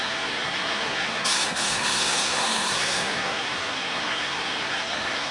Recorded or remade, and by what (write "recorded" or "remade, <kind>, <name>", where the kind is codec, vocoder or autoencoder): remade, codec, SNAC